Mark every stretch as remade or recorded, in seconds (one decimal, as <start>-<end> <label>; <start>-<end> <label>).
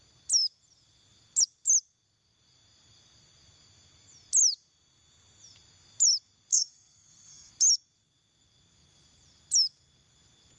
0.0-6.5 recorded; 6.5-7.5 remade; 7.5-10.6 recorded